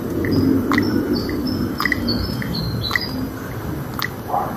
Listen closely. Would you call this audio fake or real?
real